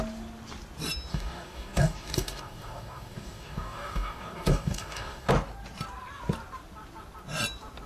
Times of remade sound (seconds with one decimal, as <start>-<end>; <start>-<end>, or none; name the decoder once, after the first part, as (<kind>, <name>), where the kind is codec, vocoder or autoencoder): 1.1-5.3 (codec, DAC)